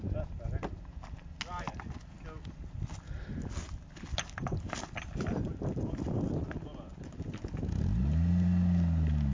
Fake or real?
real